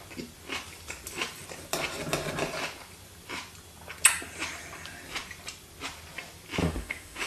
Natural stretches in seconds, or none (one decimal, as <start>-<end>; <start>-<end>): 0.0-6.6